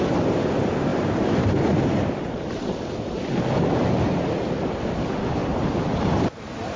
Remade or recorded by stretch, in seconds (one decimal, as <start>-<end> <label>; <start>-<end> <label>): 0.0-0.9 recorded; 0.9-3.6 remade; 3.6-6.8 recorded

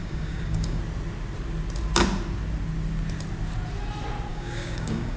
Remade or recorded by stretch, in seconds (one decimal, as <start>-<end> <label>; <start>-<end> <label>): 0.0-0.8 remade; 0.8-4.3 recorded; 4.3-5.2 remade

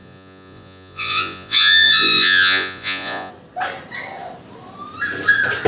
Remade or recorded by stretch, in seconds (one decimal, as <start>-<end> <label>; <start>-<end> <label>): 0.0-3.3 remade; 3.3-5.7 recorded

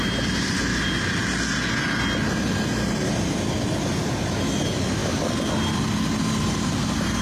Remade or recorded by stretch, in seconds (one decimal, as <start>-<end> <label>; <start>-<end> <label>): 0.0-7.2 recorded

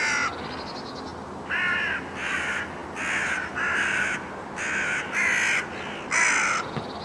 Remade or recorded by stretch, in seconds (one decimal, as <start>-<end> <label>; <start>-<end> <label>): 0.0-7.0 recorded